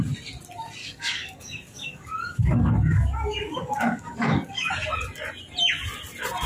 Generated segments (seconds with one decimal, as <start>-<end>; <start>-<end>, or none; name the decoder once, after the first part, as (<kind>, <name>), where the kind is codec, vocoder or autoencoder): 0.8-4.7 (codec, DAC)